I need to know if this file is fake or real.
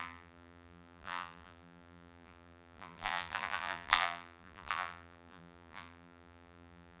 fake